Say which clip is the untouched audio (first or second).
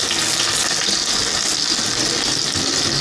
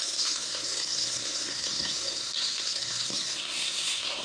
first